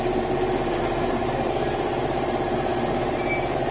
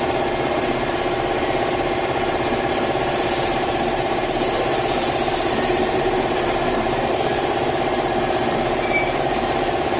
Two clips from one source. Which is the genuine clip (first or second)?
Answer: first